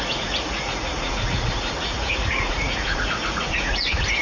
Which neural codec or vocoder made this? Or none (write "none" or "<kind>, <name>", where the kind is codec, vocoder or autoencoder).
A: vocoder, Vocos